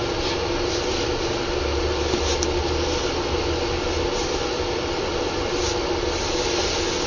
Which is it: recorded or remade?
recorded